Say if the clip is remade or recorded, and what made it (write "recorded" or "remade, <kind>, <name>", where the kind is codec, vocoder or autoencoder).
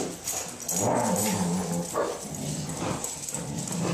recorded